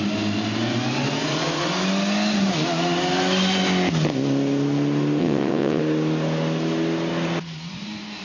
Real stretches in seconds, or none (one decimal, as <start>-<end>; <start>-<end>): 0.0-5.2; 5.8-8.2